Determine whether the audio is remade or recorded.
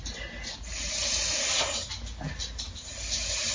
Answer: recorded